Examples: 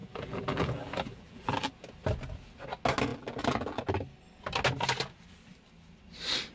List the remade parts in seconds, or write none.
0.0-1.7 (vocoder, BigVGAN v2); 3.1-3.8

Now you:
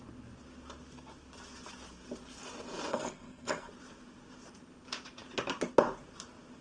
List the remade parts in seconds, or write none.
2.9-3.7 (codec, SNAC)

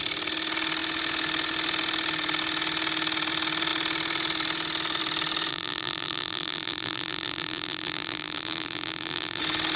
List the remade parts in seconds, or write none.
5.5-9.4 (vocoder, BigVGAN v2)